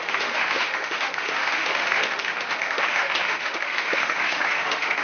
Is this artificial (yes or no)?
yes